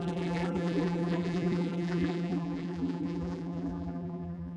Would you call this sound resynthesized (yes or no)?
yes